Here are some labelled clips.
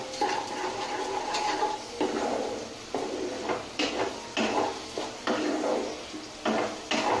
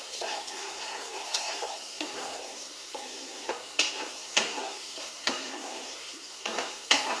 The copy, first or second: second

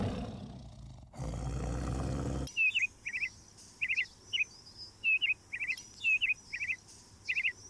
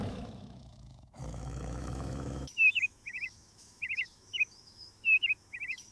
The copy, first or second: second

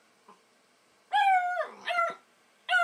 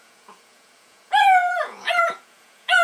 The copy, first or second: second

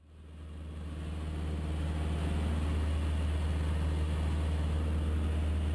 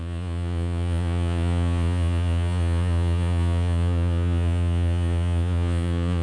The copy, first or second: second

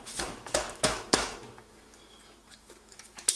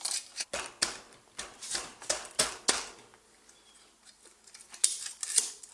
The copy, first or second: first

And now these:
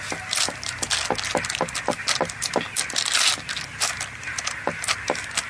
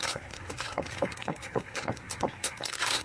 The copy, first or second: second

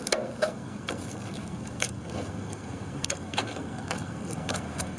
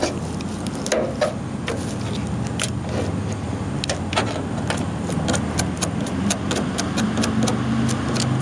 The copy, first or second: first